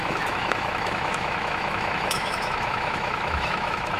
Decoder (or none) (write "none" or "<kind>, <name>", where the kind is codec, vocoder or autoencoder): autoencoder, DAC-VAE